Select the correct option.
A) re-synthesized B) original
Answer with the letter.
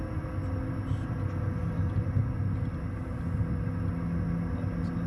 B